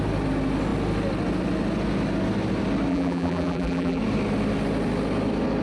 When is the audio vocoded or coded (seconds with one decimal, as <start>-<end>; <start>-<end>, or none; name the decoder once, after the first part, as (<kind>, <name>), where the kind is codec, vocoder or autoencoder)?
2.9-4.0 (vocoder, BigVGAN v2)